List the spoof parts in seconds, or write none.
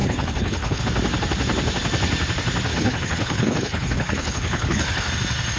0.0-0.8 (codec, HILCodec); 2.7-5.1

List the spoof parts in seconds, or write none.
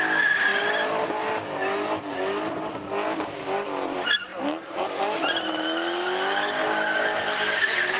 none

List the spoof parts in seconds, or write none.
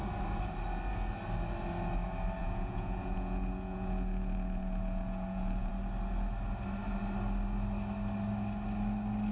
2.4-5.7 (vocoder, Vocos)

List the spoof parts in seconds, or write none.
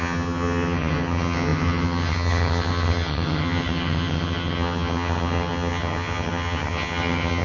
0.0-7.4 (vocoder, HiFi-GAN)